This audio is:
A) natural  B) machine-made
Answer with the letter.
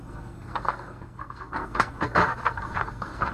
B